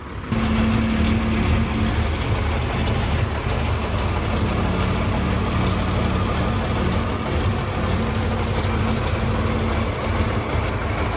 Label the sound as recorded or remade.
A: recorded